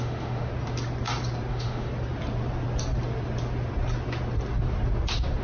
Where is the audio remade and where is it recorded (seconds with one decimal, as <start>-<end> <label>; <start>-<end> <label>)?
0.0-0.5 remade; 0.5-1.5 recorded; 1.5-1.9 remade; 1.9-5.4 recorded